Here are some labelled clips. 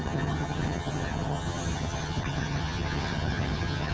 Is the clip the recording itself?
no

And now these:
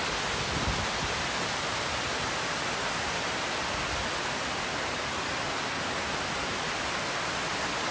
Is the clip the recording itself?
yes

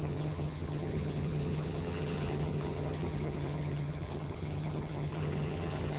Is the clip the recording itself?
no